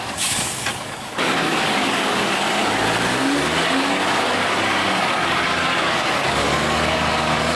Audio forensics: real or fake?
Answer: fake